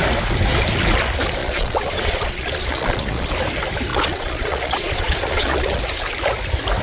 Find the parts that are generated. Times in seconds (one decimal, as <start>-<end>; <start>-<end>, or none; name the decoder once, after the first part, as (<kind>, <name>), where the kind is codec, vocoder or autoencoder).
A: 1.4-3.3 (vocoder, Vocos); 3.9-5.8